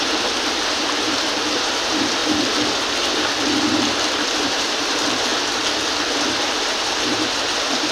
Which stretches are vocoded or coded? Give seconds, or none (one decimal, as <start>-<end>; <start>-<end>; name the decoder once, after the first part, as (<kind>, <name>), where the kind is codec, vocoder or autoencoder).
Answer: 0.0-2.2 (vocoder, BigVGAN v2); 4.4-5.3; 6.4-7.9